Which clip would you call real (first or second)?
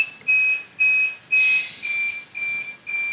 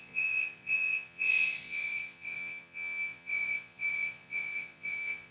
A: first